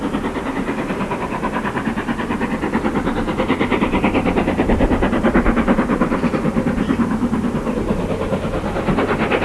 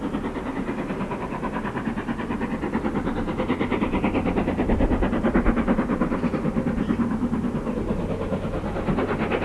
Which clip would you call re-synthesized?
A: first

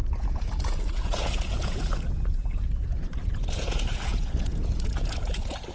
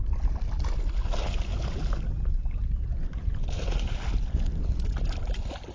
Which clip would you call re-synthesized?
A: first